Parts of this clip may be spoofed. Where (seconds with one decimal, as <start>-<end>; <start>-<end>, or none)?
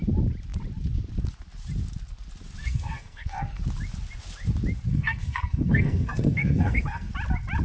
2.6-3.6; 4.9-7.1